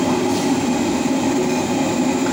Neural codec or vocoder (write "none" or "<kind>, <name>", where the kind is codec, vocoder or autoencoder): none